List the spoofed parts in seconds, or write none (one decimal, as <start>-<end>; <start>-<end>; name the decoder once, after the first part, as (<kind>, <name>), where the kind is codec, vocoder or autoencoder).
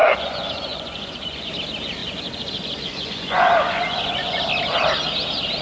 0.0-1.5 (vocoder, Vocos); 2.0-4.4